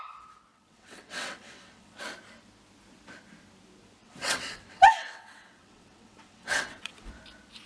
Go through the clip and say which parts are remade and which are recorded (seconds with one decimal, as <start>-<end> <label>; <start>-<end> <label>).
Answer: 0.0-0.5 recorded; 0.5-2.0 remade; 2.0-4.0 recorded; 4.0-7.1 remade; 7.1-7.7 recorded